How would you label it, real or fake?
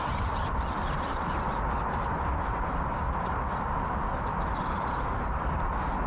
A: fake